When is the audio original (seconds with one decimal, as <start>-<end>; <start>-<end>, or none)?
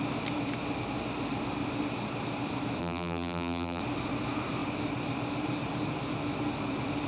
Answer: 0.0-2.8; 3.8-7.1